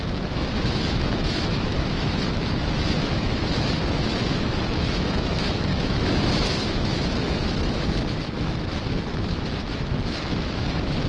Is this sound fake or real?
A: fake